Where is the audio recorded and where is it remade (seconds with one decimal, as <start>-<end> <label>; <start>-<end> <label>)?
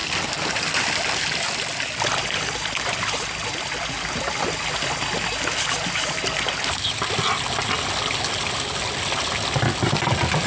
0.0-10.5 recorded